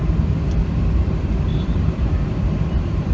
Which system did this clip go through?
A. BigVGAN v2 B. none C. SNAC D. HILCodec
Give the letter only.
A